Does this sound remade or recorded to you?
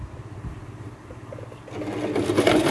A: recorded